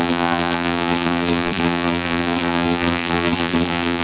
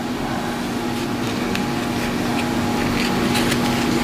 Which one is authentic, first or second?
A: second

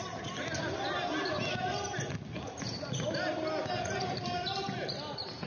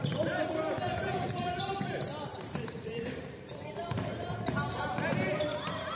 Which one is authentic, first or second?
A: first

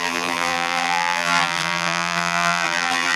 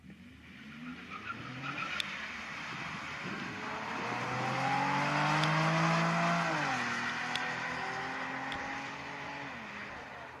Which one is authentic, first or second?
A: second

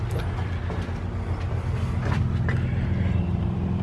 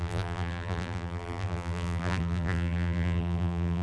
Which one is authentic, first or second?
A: first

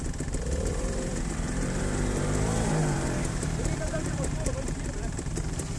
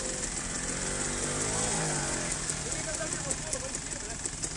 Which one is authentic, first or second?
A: second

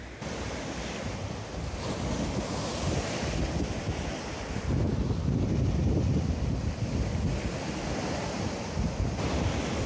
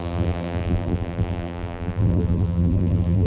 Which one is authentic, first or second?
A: first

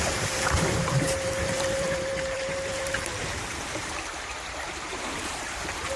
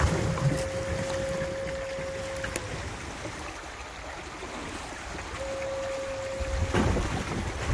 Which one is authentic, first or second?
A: second